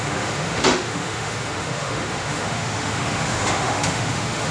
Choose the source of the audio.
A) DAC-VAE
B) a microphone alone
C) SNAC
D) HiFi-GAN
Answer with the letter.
A